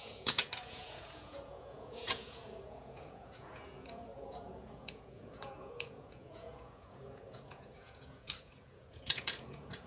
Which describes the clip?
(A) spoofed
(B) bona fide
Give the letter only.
A